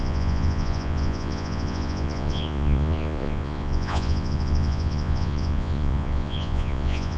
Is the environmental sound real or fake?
fake